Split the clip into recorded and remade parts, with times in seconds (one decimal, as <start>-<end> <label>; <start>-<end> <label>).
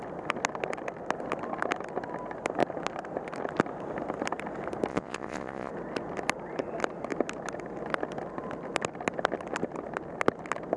0.0-4.9 recorded; 4.9-5.7 remade; 5.7-10.8 recorded